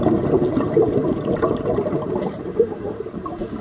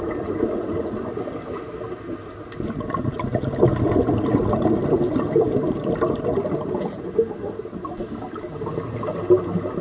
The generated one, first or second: first